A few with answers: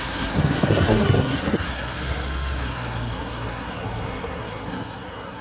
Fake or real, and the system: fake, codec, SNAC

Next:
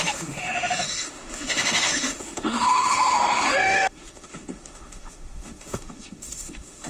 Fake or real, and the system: fake, autoencoder, DAC-VAE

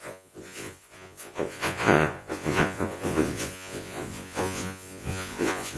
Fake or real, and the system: fake, vocoder, Vocos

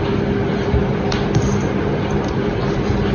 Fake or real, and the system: real